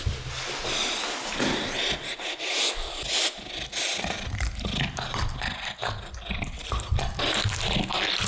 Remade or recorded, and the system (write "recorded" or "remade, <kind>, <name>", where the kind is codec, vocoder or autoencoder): recorded